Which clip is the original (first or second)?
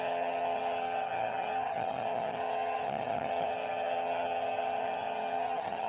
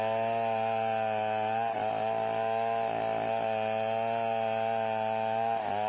second